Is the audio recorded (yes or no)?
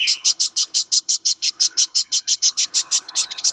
no